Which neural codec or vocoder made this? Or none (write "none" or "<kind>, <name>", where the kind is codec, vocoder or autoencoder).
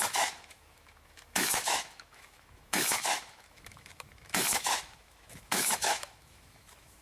autoencoder, DAC-VAE